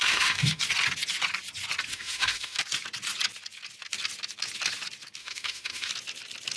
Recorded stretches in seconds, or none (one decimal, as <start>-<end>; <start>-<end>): 0.6-1.9; 2.6-5.2; 5.9-6.6